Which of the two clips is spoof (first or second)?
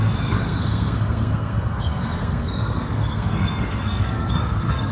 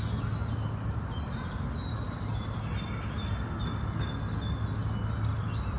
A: first